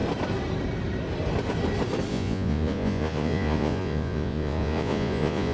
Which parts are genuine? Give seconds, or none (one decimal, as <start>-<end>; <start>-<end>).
0.0-2.1